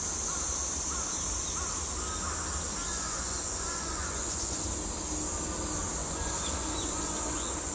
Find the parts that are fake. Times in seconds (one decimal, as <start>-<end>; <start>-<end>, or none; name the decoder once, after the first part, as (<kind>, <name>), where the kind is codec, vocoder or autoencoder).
2.9-4.6 (vocoder, Vocos); 6.0-7.7